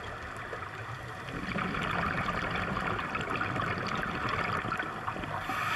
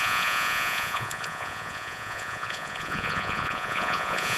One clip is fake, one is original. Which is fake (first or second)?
second